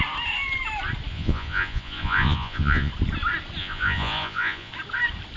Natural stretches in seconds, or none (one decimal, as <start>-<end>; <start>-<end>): 0.0-1.1; 2.9-3.6; 4.7-5.4